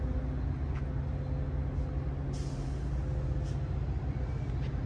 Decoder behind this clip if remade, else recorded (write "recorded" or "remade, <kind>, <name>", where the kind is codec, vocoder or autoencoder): recorded